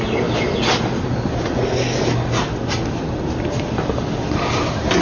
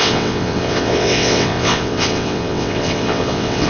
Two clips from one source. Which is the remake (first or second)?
second